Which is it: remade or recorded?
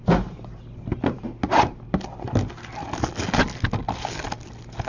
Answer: recorded